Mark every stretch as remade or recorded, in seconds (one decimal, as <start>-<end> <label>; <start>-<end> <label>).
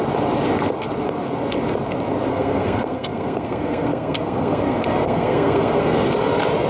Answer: 0.0-2.3 recorded; 2.3-6.1 remade; 6.1-6.7 recorded